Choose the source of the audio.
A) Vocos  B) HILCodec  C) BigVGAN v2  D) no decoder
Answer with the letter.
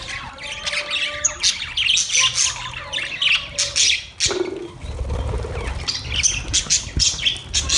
D